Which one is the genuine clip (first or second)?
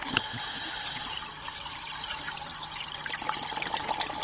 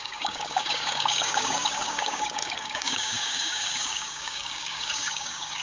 first